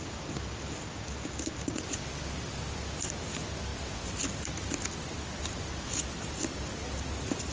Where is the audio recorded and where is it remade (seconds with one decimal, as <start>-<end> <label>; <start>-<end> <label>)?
0.0-7.5 recorded